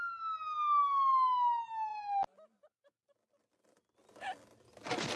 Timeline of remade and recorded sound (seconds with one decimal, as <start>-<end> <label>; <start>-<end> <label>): 0.0-5.2 recorded